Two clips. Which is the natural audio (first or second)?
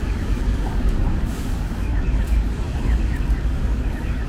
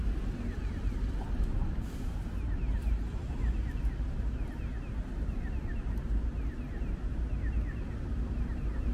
second